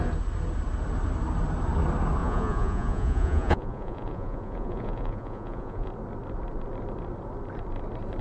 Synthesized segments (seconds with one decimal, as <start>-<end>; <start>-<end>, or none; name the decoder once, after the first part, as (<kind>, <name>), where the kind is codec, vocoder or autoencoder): 2.2-5.9 (vocoder, Vocos)